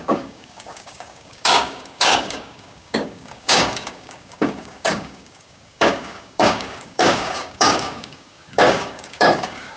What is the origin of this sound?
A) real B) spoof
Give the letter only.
B